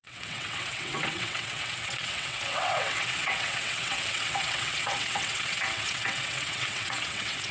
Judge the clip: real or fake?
fake